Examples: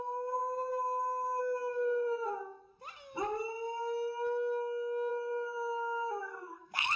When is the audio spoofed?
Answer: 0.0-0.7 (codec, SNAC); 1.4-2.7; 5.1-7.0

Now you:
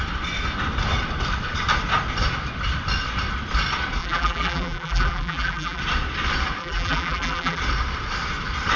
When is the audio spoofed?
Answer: 4.0-5.8 (vocoder, BigVGAN v2); 6.6-7.6